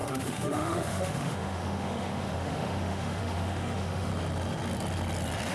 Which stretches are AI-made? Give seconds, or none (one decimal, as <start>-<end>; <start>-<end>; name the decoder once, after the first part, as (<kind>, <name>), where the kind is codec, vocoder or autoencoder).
0.0-4.1 (autoencoder, DAC-VAE)